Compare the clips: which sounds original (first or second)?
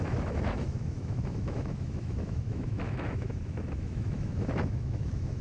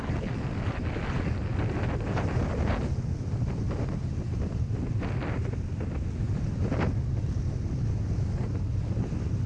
second